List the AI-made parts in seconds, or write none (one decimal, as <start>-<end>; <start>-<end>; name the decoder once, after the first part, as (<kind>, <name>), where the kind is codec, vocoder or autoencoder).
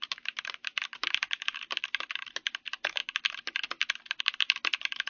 0.0-3.0 (vocoder, BigVGAN v2); 4.2-5.1